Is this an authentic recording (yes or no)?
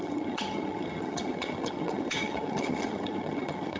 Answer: no